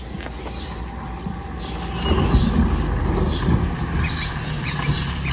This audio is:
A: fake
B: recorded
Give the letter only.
B